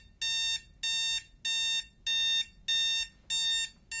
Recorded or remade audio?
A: recorded